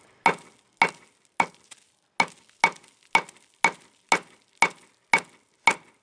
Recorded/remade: recorded